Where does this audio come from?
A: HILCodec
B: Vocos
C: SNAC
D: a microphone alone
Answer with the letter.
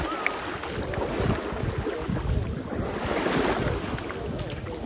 D